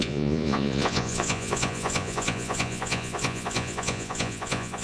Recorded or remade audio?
remade